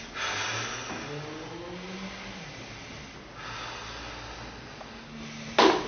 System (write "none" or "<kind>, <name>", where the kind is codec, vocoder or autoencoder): none